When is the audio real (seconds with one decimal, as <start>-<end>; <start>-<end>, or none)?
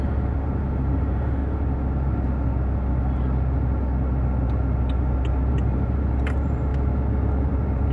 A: 1.4-5.5; 6.7-7.5